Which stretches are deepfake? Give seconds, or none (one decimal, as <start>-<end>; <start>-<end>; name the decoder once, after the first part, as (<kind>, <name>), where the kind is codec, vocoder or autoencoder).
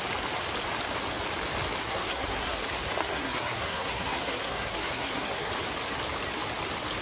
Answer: 1.8-2.6 (codec, SNAC); 3.0-5.5